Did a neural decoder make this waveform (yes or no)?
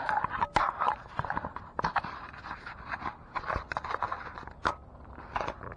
no